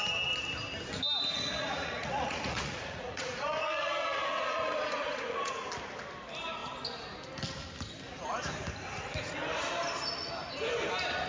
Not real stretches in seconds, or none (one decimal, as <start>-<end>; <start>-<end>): 1.3-5.7